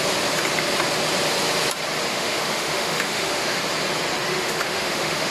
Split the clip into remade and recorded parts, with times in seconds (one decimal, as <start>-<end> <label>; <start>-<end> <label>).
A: 0.0-2.1 recorded; 2.1-3.6 remade; 3.6-4.3 recorded; 4.3-5.3 remade